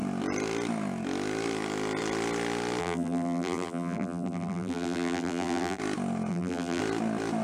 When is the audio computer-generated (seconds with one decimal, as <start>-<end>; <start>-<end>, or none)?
2.8-5.8; 6.3-6.8